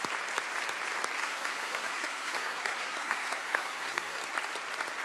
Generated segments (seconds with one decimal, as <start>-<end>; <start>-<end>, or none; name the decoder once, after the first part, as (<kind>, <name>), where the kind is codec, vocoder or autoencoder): 1.2-4.2 (codec, SNAC)